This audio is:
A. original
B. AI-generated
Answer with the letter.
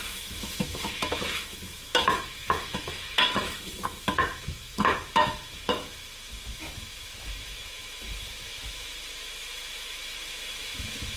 B